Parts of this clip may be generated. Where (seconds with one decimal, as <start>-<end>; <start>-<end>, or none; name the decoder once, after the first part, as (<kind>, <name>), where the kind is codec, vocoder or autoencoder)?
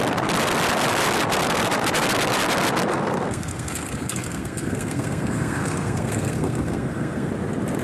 2.9-7.3 (codec, SNAC)